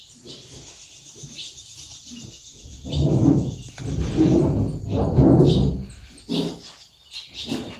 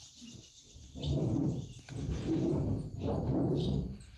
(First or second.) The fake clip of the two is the second